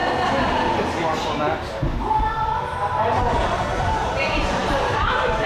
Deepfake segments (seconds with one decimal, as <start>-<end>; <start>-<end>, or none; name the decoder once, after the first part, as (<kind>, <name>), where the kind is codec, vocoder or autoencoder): 3.3-5.5 (vocoder, BigVGAN v2)